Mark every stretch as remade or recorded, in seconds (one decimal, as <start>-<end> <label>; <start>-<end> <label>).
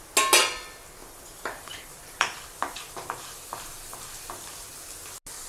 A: 0.0-1.0 recorded; 1.0-4.3 remade; 4.3-5.5 recorded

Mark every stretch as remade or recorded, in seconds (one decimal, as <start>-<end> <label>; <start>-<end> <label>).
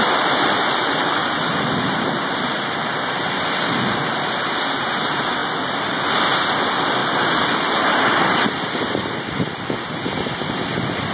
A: 0.0-1.2 recorded; 1.2-2.1 remade; 2.1-7.0 recorded; 7.0-7.8 remade; 7.8-11.1 recorded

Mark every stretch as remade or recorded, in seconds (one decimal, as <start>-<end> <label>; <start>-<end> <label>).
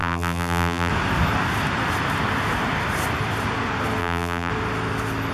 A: 0.0-0.9 remade; 0.9-4.0 recorded; 4.0-4.5 remade; 4.5-5.3 recorded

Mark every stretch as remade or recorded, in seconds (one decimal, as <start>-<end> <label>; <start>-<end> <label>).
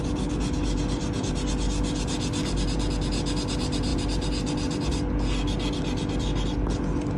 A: 0.0-7.2 recorded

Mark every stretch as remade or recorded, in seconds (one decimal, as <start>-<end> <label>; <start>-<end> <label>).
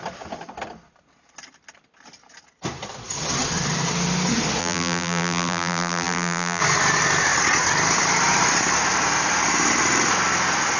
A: 0.0-4.6 recorded; 4.6-6.6 remade; 6.6-10.8 recorded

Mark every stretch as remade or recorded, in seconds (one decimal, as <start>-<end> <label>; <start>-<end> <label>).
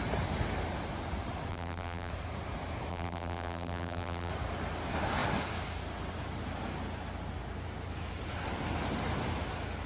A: 0.0-1.5 recorded; 1.5-2.1 remade; 2.1-2.9 recorded; 2.9-4.3 remade; 4.3-9.9 recorded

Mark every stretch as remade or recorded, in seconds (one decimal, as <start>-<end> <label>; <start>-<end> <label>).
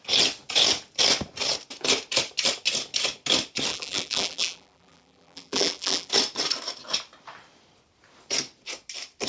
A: 0.0-3.7 recorded; 3.7-6.1 remade; 6.1-9.3 recorded